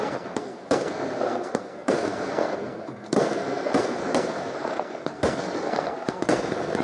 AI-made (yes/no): yes